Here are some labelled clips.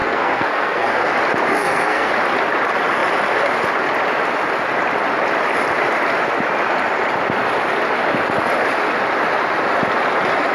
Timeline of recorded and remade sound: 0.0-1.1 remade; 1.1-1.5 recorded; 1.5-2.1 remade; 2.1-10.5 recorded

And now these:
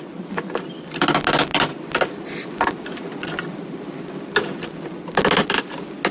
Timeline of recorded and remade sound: 0.0-6.1 recorded